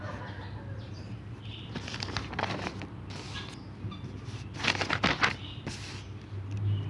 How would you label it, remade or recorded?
recorded